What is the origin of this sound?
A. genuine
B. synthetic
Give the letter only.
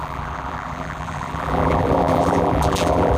B